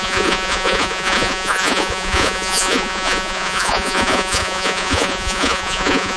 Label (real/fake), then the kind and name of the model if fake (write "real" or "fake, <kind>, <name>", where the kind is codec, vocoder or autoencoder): fake, vocoder, Vocos